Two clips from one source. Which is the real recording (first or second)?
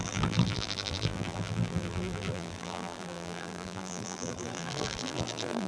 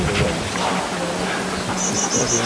second